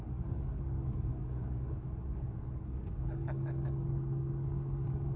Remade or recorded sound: remade